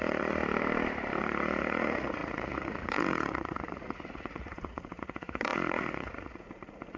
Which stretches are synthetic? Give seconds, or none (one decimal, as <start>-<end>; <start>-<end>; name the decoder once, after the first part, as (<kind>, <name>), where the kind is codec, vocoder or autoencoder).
0.0-0.4 (vocoder, Vocos); 1.2-7.0